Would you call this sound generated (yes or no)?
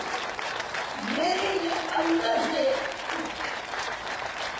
yes